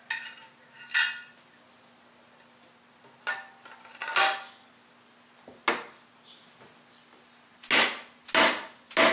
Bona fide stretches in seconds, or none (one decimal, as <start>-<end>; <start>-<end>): 0.0-9.1

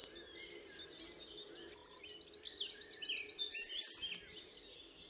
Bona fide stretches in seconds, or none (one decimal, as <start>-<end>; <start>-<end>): 0.0-5.1